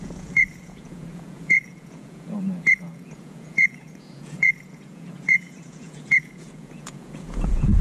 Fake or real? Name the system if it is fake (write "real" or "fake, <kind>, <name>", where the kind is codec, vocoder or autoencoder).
fake, vocoder, Vocos